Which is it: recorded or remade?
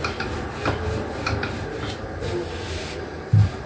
recorded